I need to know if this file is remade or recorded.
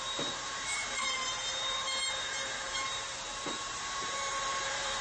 remade